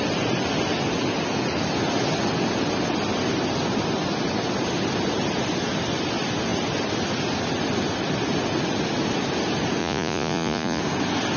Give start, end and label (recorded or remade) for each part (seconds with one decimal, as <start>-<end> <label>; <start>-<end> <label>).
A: 0.0-9.8 recorded; 9.8-10.8 remade; 10.8-11.4 recorded